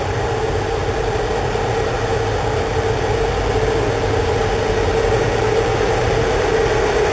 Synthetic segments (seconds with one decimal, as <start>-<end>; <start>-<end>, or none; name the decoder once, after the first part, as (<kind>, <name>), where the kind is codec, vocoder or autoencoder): 5.7-7.1 (vocoder, BigVGAN v2)